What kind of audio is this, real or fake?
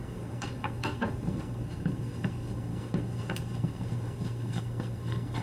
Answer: fake